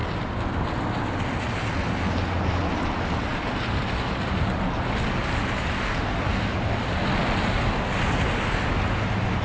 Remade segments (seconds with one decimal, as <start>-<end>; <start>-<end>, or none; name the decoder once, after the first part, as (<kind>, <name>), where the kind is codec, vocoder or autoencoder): none